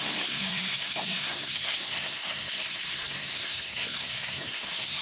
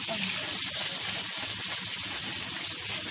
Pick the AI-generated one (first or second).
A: first